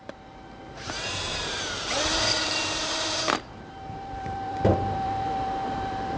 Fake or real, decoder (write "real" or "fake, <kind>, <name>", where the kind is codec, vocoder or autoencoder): fake, vocoder, BigVGAN v2